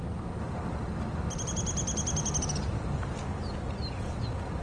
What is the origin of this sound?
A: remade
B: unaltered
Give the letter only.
B